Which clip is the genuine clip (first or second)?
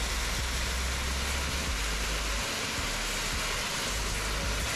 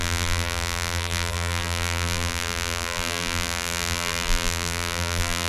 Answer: first